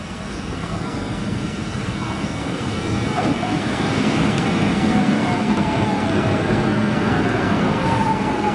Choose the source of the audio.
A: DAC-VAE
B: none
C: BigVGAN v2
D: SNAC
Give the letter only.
D